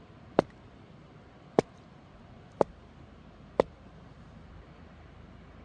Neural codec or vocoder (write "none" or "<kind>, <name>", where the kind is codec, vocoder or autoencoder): none